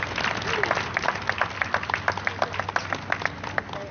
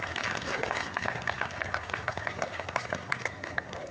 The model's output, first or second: second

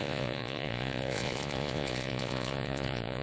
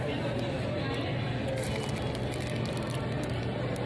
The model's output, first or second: first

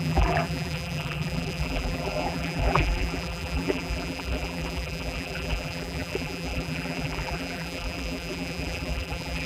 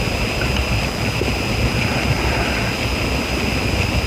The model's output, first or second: first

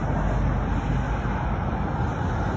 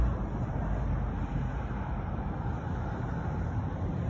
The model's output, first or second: second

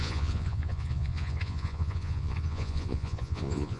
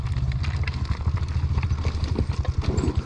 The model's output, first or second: first